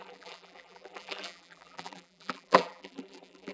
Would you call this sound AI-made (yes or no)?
yes